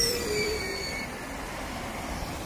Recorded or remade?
remade